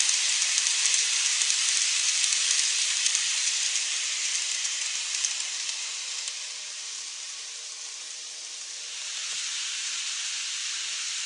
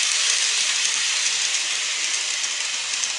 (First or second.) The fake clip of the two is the first